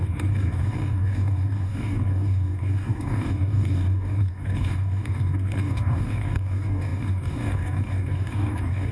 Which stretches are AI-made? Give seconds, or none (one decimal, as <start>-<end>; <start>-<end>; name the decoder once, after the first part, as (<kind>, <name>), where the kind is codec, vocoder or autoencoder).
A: 0.0-8.9 (codec, DAC)